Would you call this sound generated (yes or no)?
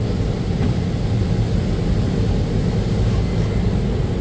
no